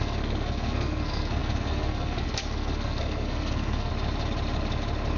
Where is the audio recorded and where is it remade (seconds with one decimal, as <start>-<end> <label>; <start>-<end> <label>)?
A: 0.0-3.9 remade; 3.9-5.2 recorded